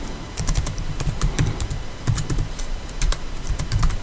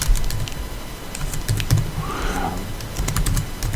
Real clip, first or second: second